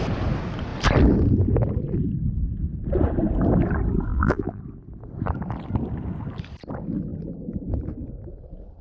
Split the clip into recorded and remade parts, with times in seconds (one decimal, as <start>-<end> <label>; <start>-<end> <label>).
0.0-4.1 recorded; 4.1-4.6 remade; 4.6-8.8 recorded